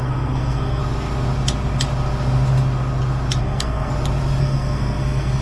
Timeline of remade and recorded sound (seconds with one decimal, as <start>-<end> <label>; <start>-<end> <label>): 0.0-0.8 remade; 0.8-3.4 recorded; 3.4-3.9 remade; 3.9-4.4 recorded; 4.4-5.4 remade